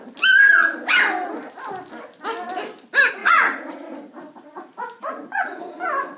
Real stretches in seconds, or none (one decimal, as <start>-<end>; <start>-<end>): 0.0-3.2; 5.6-6.2